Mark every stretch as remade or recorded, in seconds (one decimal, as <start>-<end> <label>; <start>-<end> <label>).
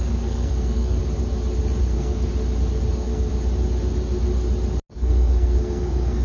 0.0-1.0 remade; 1.0-1.8 recorded; 1.8-2.3 remade; 2.3-2.9 recorded; 2.9-3.3 remade; 3.3-4.9 recorded; 4.9-6.2 remade